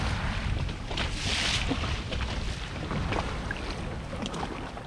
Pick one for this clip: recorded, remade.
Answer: recorded